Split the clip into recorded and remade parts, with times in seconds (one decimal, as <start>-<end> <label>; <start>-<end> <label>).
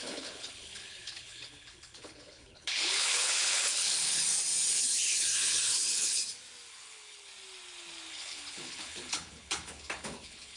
0.0-4.2 remade; 4.2-4.8 recorded; 4.8-6.2 remade; 6.2-6.7 recorded; 6.7-7.3 remade; 7.3-8.1 recorded; 8.1-10.6 remade